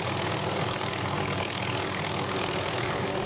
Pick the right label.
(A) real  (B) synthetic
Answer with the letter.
B